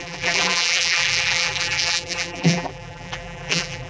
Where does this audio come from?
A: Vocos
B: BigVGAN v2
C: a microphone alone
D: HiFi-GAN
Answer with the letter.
B